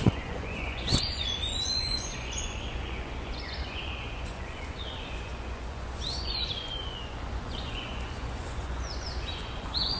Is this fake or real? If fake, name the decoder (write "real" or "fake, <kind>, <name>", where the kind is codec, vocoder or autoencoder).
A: fake, vocoder, Vocos